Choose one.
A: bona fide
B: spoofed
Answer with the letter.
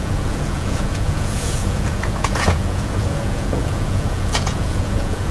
B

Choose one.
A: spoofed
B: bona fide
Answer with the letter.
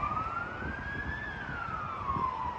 B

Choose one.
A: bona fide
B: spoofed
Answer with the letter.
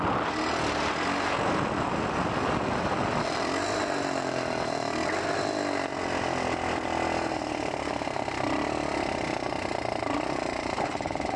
A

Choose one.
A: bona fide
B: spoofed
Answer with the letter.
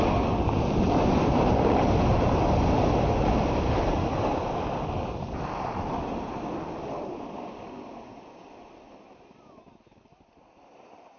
A